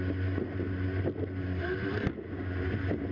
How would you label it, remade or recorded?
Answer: recorded